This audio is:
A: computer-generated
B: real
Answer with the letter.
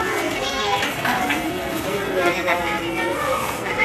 A